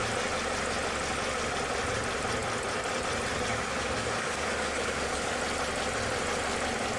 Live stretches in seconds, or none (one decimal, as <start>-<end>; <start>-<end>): 0.0-3.5; 5.4-7.0